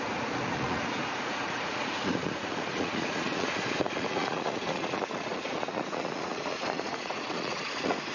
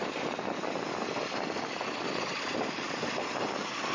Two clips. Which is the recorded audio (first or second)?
second